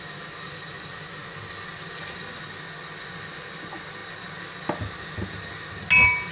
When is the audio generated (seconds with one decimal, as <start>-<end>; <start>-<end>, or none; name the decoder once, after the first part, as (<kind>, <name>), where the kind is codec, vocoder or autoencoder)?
none